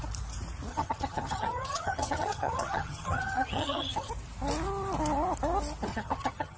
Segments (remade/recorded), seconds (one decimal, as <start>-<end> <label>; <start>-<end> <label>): 0.0-0.7 recorded; 0.7-4.1 remade; 4.1-5.9 recorded; 5.9-6.6 remade